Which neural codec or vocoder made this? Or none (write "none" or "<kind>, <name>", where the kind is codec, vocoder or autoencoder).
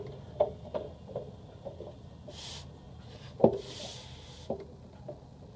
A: none